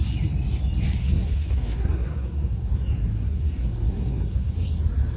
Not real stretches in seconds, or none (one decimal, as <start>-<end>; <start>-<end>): 1.0-2.7; 3.1-4.8